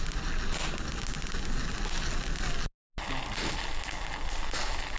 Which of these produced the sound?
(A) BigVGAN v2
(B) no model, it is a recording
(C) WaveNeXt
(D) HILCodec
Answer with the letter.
B